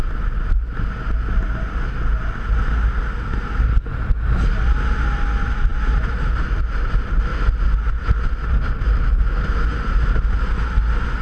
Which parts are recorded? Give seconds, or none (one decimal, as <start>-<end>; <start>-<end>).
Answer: 0.0-11.2